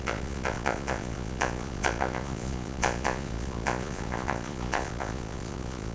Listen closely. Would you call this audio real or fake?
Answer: fake